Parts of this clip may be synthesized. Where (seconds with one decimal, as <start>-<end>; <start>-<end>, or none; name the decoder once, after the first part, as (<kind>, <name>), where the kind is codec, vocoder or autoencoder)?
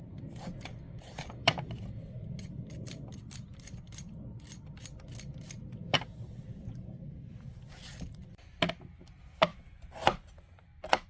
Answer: none